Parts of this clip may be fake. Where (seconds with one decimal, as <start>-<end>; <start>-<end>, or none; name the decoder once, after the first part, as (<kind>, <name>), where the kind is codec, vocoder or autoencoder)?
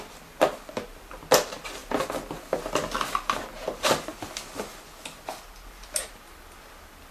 none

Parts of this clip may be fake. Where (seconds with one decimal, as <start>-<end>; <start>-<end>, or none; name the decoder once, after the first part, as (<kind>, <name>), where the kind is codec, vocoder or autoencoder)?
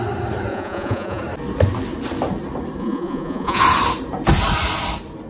0.5-1.2 (vocoder, Vocos); 2.8-3.6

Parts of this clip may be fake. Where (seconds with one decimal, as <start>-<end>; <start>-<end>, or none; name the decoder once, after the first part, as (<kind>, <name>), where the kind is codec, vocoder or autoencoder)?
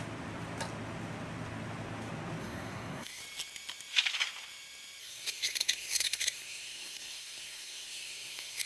2.4-3.2 (codec, SNAC); 5.0-8.7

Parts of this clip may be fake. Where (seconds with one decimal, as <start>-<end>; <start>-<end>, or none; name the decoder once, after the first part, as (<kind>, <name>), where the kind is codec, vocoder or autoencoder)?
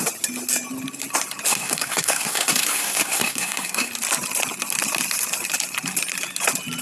1.5-3.9 (codec, SNAC)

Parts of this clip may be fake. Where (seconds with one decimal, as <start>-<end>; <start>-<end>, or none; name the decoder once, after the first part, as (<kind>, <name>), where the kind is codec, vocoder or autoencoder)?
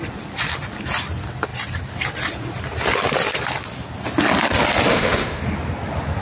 4.9-5.4 (autoencoder, DAC-VAE)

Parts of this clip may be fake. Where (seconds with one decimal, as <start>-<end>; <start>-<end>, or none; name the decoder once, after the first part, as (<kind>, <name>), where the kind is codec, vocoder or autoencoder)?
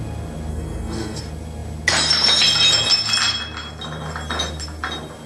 0.5-1.2 (codec, SNAC)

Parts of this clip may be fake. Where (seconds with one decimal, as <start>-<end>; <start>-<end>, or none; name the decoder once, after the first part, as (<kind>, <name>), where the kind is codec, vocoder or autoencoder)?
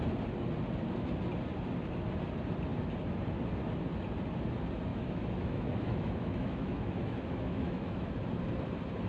4.9-8.1 (autoencoder, DAC-VAE)